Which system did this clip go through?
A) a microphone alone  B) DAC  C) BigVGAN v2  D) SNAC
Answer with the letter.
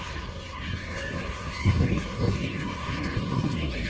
D